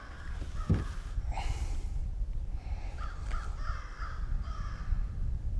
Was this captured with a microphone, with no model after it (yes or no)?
yes